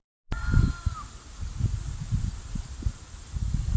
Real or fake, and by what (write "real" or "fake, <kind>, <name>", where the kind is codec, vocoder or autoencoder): real